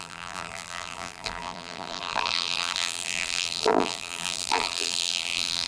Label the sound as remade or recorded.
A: remade